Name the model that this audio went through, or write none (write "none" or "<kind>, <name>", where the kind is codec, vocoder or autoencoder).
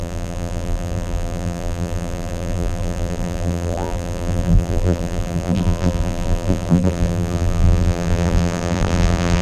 vocoder, BigVGAN v2